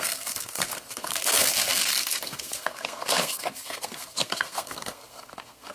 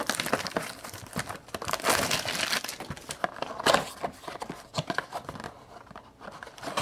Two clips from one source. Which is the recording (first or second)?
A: second